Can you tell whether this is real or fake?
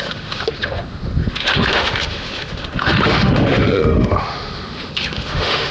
fake